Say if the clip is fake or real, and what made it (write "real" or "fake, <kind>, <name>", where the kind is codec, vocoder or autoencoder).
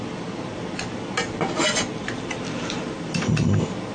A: real